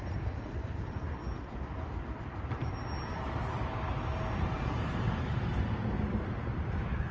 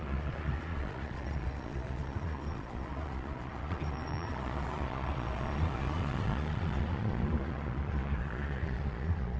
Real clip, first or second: first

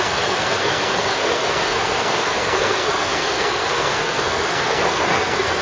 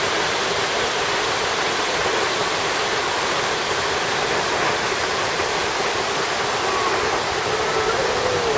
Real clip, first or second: second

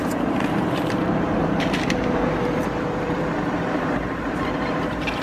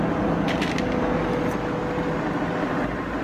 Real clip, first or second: second